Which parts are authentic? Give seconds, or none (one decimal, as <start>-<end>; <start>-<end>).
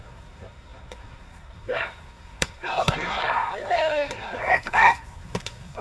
none